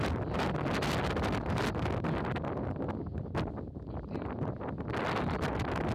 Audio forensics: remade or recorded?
recorded